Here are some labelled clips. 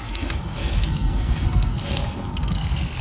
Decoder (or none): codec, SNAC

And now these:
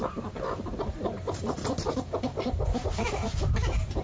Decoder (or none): vocoder, BigVGAN v2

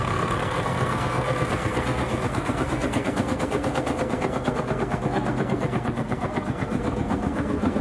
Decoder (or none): codec, SNAC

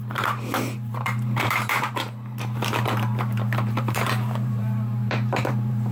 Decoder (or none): vocoder, BigVGAN v2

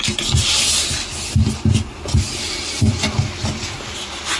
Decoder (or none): none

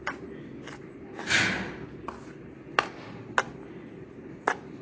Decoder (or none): none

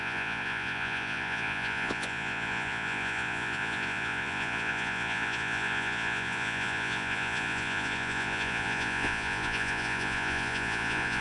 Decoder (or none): vocoder, Vocos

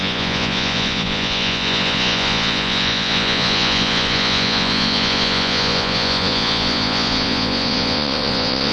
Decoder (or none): vocoder, Vocos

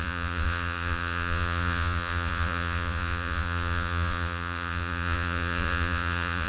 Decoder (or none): vocoder, Vocos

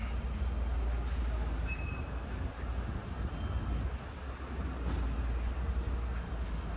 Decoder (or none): none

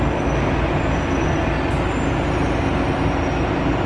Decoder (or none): none